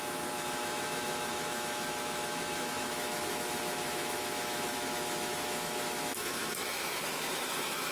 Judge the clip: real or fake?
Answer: fake